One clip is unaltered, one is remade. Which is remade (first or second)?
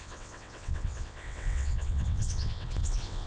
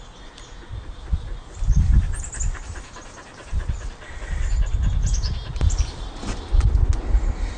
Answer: first